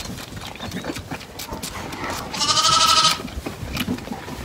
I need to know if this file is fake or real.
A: real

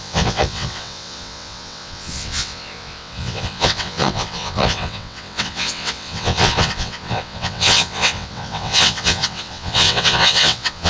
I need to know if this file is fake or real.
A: fake